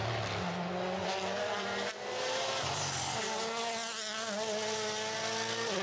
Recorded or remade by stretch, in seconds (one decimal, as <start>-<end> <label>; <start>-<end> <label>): 0.0-5.8 recorded